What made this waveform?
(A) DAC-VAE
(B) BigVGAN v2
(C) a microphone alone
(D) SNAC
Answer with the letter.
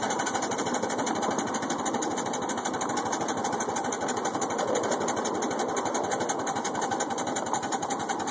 C